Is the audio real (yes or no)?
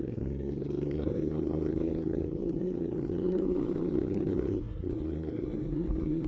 no